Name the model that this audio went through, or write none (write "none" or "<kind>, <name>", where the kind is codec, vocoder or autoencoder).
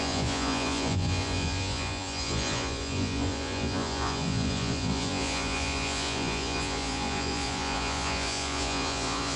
vocoder, Vocos